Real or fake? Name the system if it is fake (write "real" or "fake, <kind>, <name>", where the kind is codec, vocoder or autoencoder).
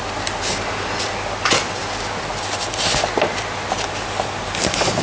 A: real